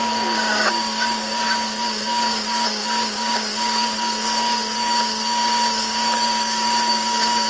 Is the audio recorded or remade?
remade